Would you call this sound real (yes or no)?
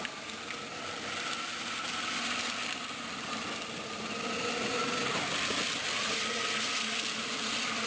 yes